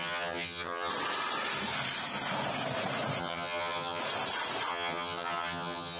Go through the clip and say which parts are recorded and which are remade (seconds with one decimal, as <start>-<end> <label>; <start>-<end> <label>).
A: 0.0-0.9 remade; 0.9-3.2 recorded; 3.2-4.0 remade; 4.0-4.7 recorded; 4.7-6.0 remade